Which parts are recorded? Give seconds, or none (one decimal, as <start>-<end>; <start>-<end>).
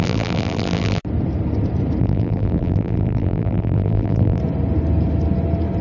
1.0-2.0; 4.4-5.8